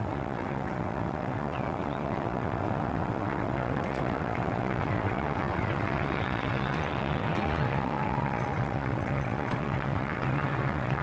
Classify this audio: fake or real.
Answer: fake